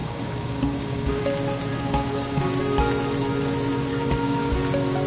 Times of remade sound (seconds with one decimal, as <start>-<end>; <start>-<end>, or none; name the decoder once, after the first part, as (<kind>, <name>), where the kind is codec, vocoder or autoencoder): 0.0-1.2 (codec, DAC); 1.7-2.6; 3.9-4.5